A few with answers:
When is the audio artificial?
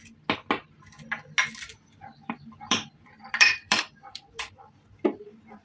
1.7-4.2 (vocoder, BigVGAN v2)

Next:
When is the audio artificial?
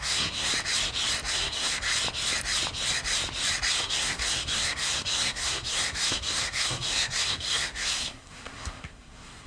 0.0-0.5 (codec, SNAC); 1.3-1.9; 3.7-9.5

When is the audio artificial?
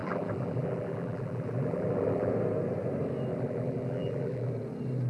0.0-2.3 (vocoder, BigVGAN v2); 3.3-4.5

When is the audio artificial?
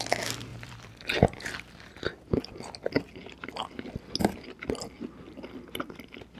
0.5-1.8 (vocoder, BigVGAN v2)